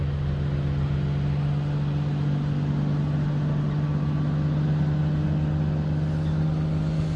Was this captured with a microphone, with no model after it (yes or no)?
yes